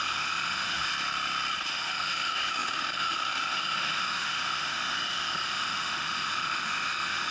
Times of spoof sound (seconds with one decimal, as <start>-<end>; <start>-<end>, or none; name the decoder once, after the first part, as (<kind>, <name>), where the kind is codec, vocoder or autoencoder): 0.0-0.9 (autoencoder, DAC-VAE); 1.7-7.3